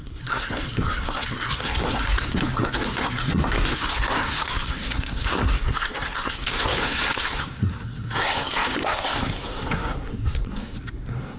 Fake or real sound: fake